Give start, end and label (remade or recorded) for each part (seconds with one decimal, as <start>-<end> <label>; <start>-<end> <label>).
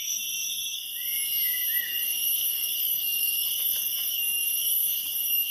0.0-0.8 remade; 0.8-1.8 recorded; 1.8-5.5 remade